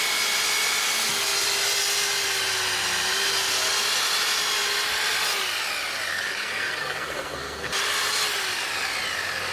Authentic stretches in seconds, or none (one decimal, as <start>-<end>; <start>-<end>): 0.0-6.1; 7.7-9.5